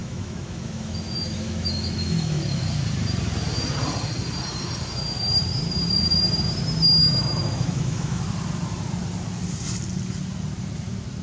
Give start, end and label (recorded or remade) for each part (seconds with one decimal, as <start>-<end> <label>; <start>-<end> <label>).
0.0-2.6 remade; 2.6-7.0 recorded; 7.0-8.2 remade; 8.2-11.2 recorded